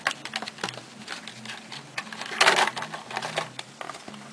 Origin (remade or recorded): recorded